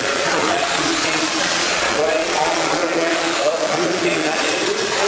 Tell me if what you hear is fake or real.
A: fake